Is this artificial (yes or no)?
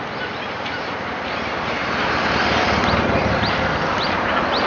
yes